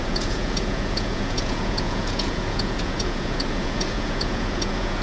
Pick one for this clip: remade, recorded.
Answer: remade